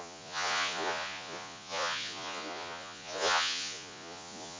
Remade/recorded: remade